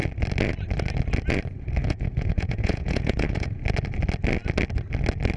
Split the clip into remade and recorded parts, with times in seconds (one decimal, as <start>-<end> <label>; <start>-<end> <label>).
0.0-1.8 recorded; 1.8-3.6 remade; 3.6-5.4 recorded